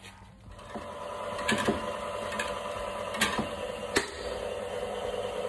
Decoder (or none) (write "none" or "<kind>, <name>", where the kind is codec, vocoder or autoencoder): none